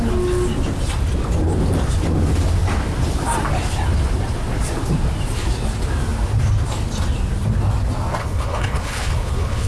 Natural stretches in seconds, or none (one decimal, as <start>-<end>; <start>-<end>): 0.0-8.2